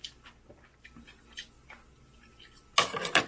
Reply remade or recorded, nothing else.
recorded